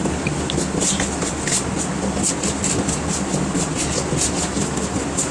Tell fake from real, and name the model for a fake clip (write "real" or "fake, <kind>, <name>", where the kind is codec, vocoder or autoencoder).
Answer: real